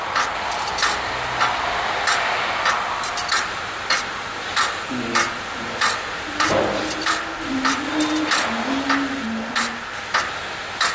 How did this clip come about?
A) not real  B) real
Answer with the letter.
B